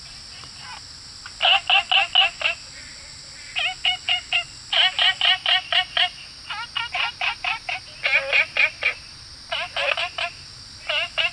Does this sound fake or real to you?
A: real